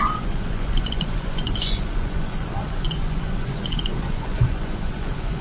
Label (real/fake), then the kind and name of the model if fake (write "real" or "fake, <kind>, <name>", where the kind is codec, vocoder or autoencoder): fake, vocoder, Vocos